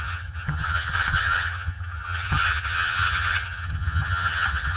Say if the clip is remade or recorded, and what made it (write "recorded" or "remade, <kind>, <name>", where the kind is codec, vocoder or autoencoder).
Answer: remade, vocoder, HiFi-GAN